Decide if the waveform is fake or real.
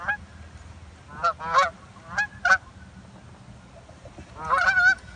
real